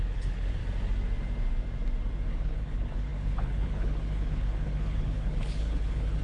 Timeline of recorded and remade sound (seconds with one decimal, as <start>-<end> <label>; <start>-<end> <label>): 0.0-0.6 remade; 0.6-2.3 recorded; 2.3-6.2 remade